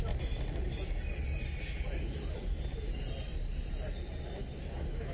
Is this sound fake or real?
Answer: real